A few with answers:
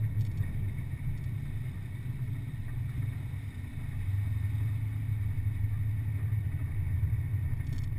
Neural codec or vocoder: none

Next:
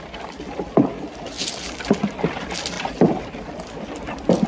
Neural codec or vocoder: vocoder, BigVGAN v2